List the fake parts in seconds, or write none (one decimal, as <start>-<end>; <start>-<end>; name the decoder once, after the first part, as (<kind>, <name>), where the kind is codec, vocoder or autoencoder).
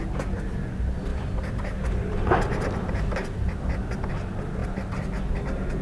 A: 1.1-4.1 (vocoder, BigVGAN v2)